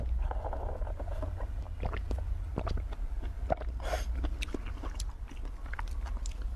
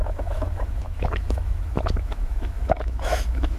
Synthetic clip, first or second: second